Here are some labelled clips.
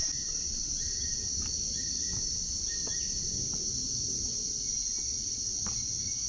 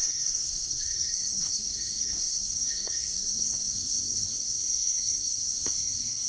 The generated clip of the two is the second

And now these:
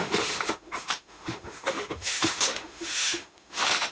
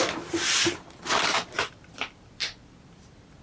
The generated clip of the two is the first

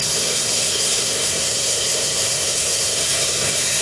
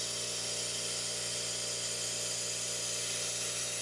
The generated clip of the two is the first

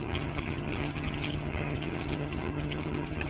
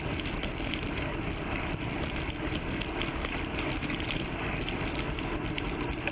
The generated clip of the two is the first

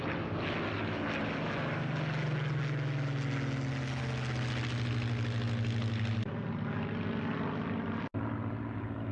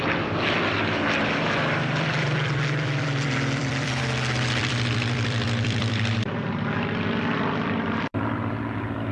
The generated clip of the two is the second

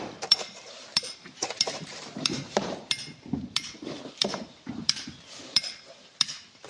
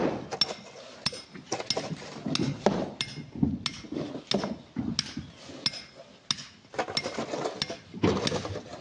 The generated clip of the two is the first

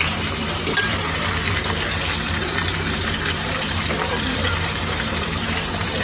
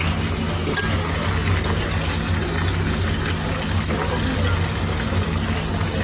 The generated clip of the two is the first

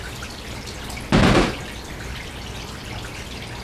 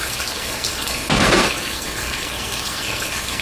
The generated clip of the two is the second